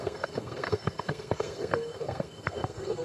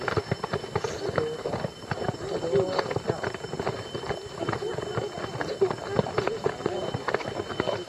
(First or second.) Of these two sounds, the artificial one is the first